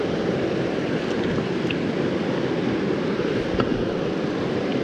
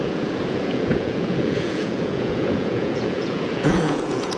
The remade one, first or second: second